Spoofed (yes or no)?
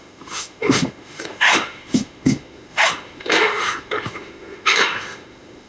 yes